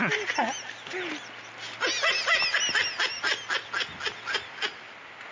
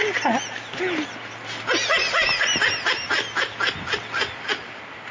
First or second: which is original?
first